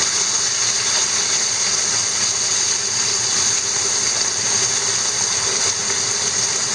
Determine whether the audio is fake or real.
real